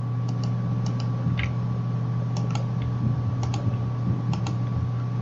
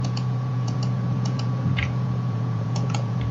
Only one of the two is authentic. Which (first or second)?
first